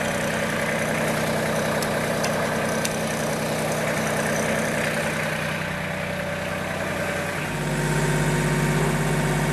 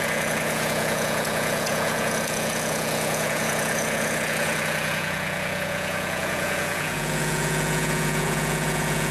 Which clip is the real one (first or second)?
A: first